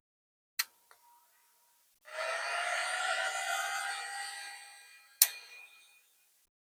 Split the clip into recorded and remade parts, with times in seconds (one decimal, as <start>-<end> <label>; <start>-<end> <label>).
0.0-6.8 recorded